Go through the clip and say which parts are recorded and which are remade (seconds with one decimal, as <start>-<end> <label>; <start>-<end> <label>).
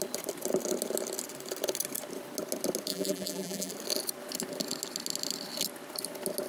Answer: 0.0-2.9 recorded; 2.9-3.7 remade; 3.7-6.5 recorded